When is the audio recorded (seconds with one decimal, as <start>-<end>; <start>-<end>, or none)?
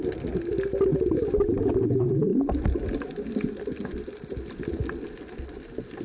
0.0-6.0